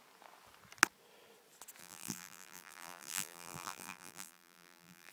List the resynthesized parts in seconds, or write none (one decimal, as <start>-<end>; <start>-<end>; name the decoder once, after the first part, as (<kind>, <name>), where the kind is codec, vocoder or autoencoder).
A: 1.8-5.1 (vocoder, BigVGAN v2)